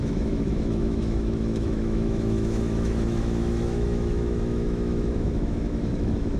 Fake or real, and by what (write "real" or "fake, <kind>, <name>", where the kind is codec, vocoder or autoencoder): fake, autoencoder, DAC-VAE